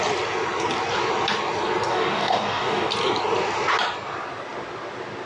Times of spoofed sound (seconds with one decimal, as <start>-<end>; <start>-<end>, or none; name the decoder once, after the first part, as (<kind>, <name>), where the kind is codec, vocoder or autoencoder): 1.9-2.9 (codec, DAC)